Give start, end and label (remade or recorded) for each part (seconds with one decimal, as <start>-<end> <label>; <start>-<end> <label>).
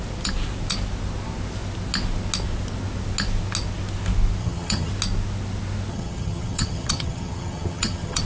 0.0-4.4 recorded; 4.4-4.9 remade; 4.9-5.9 recorded; 5.9-8.2 remade